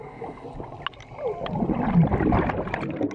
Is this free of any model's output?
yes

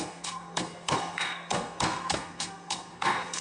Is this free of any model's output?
no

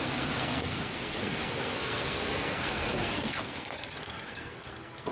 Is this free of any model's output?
no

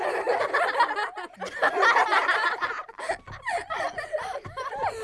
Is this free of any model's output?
yes